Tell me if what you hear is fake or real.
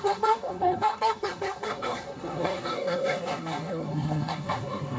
fake